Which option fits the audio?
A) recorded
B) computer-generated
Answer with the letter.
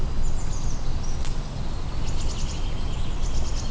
A